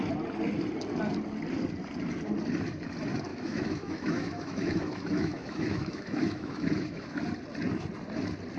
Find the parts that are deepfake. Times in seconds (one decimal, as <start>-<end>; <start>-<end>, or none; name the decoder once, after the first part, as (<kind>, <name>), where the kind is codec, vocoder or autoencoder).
3.3-7.2 (autoencoder, DAC-VAE)